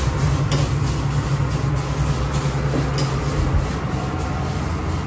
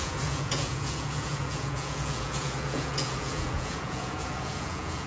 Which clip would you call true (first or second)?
first